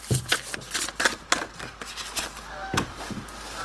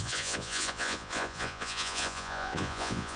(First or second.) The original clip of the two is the first